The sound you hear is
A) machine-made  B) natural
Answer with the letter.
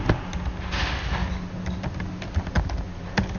B